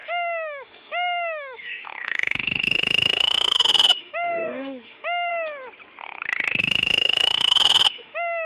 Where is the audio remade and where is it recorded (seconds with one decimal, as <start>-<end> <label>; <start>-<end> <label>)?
0.0-5.3 remade; 5.3-6.6 recorded; 6.6-8.4 remade